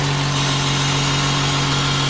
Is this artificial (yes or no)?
no